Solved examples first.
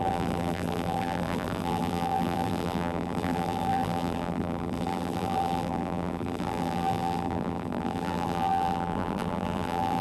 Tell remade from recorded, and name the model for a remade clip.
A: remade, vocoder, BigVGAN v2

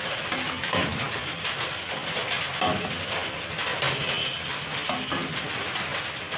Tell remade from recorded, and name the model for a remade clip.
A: recorded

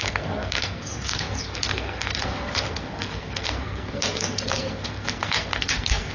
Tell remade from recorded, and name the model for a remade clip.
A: remade, codec, SNAC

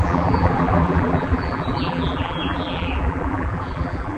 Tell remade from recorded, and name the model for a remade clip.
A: remade, vocoder, BigVGAN v2